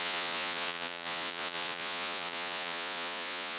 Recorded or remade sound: remade